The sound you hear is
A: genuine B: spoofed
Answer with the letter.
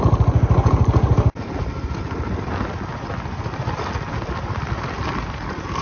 A